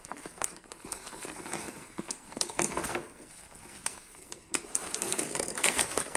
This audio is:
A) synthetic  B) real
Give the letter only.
A